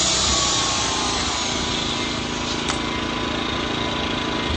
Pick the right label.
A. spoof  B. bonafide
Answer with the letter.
B